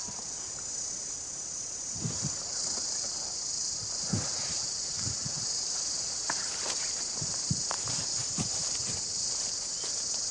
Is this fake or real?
fake